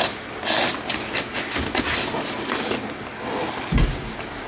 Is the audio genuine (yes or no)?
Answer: yes